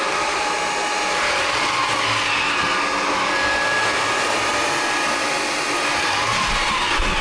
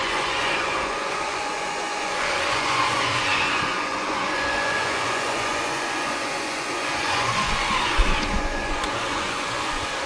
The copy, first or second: second